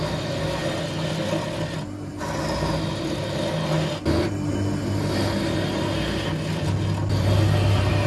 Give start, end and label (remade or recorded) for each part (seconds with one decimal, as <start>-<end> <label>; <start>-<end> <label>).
0.0-8.1 recorded